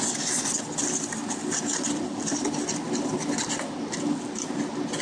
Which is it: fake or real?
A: real